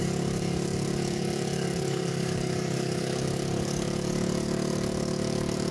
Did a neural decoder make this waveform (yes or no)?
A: yes